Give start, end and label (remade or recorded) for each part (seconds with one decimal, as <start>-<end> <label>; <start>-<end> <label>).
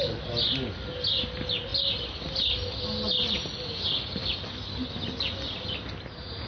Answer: 0.0-6.5 recorded